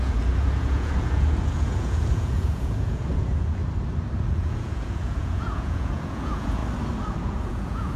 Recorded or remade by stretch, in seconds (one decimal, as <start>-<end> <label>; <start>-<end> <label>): 0.0-3.6 remade; 3.6-4.3 recorded; 4.3-6.6 remade; 6.6-7.1 recorded; 7.1-8.0 remade